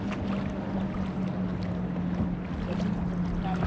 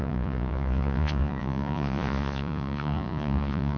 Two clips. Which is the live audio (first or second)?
first